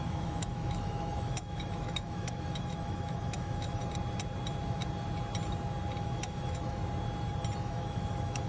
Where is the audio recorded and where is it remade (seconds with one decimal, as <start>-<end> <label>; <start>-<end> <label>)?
0.0-3.8 remade; 3.8-6.0 recorded; 6.0-6.8 remade; 6.8-7.6 recorded; 7.6-8.5 remade